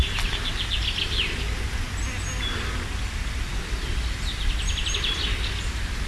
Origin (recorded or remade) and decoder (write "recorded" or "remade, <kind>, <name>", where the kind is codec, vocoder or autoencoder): recorded